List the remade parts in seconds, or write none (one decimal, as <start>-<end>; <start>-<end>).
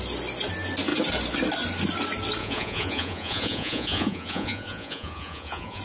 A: 2.4-5.8